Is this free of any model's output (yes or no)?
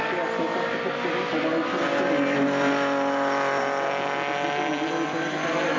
yes